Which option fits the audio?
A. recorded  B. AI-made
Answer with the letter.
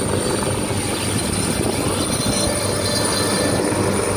A